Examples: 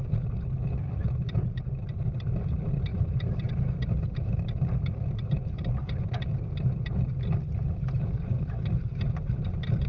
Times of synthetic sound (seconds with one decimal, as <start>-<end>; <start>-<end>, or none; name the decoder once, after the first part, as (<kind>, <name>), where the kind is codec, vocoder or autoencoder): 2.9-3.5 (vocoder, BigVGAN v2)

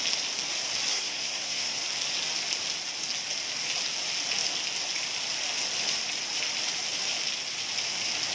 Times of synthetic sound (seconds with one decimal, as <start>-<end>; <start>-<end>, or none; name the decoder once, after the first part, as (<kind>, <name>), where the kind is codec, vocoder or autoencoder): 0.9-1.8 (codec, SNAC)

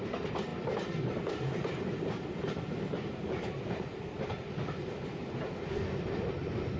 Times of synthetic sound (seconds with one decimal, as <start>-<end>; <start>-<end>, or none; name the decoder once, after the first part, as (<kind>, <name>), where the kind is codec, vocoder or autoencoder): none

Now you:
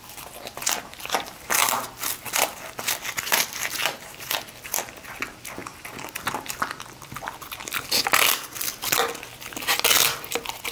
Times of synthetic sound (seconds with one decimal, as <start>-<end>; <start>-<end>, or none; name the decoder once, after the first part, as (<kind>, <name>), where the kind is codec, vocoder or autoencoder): 3.8-4.4 (vocoder, BigVGAN v2)